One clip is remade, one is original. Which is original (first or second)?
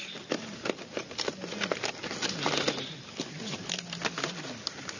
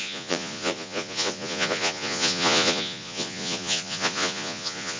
first